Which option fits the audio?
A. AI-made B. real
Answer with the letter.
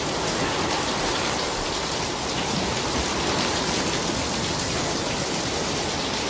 B